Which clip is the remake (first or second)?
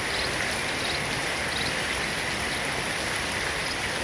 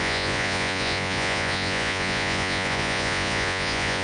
second